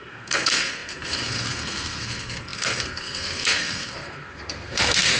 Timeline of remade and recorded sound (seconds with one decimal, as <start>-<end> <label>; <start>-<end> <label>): 0.0-5.2 remade